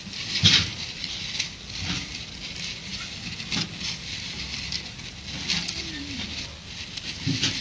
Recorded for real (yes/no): yes